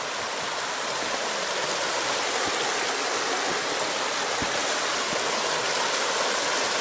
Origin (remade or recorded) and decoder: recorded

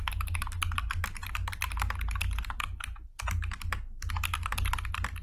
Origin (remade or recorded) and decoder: recorded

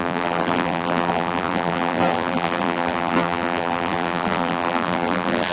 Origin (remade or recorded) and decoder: remade, vocoder, BigVGAN v2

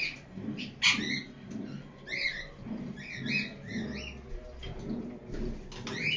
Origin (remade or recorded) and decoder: recorded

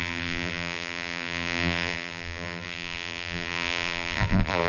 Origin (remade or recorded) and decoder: remade, vocoder, BigVGAN v2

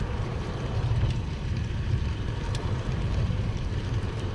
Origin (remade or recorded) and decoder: remade, vocoder, BigVGAN v2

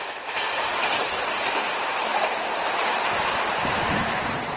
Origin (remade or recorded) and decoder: remade, vocoder, BigVGAN v2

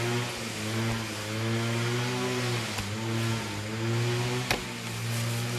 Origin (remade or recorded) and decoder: recorded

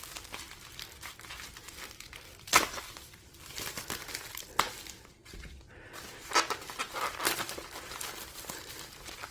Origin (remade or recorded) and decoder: recorded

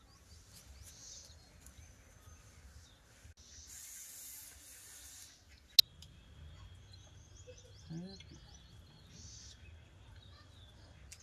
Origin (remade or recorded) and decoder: recorded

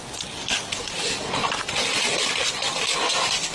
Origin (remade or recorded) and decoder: recorded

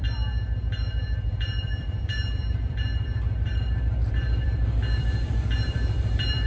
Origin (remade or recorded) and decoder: remade, vocoder, BigVGAN v2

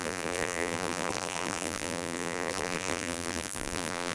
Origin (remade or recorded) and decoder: remade, vocoder, BigVGAN v2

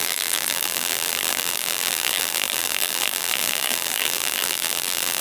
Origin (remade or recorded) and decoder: remade, vocoder, BigVGAN v2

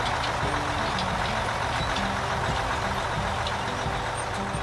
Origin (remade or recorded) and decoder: recorded